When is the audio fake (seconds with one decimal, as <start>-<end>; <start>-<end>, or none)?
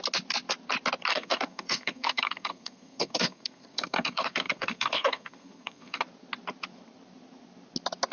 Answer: 1.1-6.0